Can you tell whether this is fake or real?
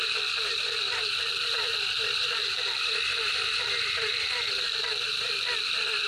fake